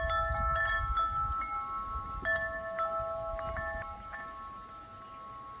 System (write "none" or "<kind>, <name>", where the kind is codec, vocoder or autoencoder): none